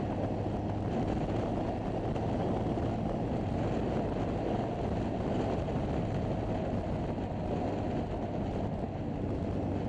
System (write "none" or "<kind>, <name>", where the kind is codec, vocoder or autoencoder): none